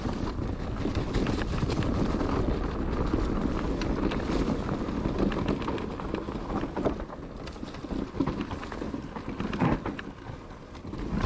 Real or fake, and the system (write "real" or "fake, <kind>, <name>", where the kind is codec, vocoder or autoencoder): real